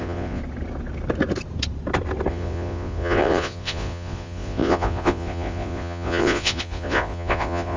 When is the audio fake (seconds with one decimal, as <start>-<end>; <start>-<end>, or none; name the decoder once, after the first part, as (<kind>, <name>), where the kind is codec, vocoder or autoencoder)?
0.0-0.4 (vocoder, Vocos); 2.3-7.8

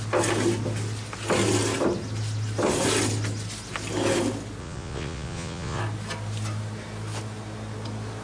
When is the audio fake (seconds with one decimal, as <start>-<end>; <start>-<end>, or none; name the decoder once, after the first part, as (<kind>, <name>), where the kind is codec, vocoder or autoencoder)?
4.6-5.8 (vocoder, Vocos)

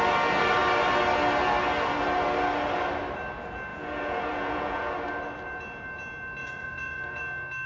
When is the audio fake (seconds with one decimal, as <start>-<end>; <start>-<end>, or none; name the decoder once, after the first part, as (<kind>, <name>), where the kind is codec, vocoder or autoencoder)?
3.7-4.9 (vocoder, Vocos); 6.4-7.2

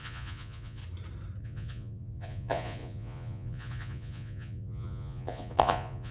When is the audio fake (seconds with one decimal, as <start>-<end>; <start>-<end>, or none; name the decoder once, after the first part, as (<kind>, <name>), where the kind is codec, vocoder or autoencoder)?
0.0-0.8 (vocoder, Vocos); 1.4-6.1